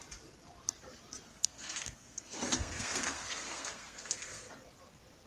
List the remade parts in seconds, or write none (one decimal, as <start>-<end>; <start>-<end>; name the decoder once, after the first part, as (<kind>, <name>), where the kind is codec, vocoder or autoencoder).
1.3-4.5 (codec, SNAC)